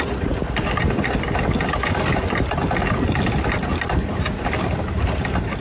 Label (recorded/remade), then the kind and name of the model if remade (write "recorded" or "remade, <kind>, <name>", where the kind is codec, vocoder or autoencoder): recorded